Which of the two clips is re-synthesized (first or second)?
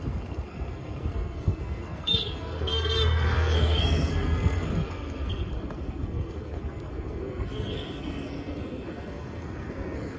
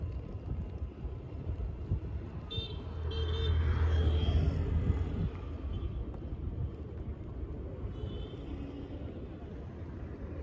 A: first